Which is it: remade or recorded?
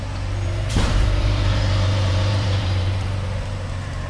remade